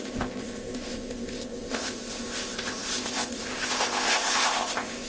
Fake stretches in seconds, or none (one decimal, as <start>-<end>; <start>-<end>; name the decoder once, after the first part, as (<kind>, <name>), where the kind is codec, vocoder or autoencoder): 0.0-5.1 (codec, ZipCodec)